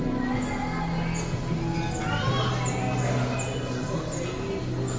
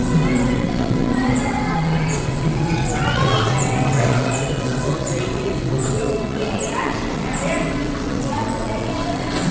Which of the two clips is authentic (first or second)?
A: first